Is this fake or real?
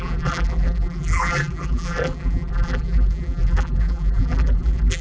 fake